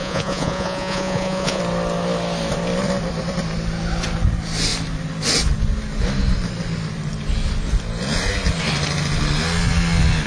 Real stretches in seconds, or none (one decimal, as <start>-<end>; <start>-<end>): 1.6-10.3